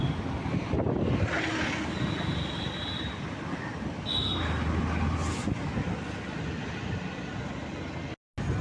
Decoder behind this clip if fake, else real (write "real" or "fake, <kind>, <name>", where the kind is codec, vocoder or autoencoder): real